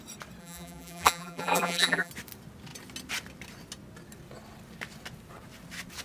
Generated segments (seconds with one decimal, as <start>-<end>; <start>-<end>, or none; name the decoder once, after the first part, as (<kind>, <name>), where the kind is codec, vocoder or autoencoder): 0.4-2.1 (vocoder, BigVGAN v2)